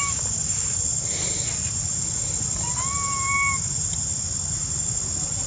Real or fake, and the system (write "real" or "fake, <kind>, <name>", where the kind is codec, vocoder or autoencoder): real